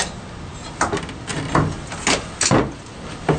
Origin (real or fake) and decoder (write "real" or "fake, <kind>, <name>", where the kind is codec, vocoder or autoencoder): real